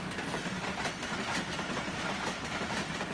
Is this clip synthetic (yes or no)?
no